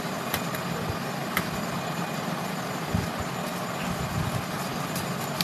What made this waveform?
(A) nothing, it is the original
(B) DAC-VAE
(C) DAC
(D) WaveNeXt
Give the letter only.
A